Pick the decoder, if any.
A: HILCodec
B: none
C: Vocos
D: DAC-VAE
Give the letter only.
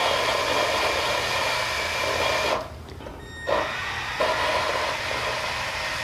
B